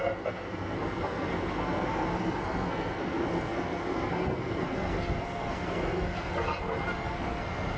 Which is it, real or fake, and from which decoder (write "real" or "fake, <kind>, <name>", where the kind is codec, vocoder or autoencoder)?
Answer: fake, codec, SNAC